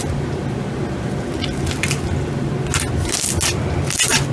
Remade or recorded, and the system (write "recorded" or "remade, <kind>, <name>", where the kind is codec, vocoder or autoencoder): recorded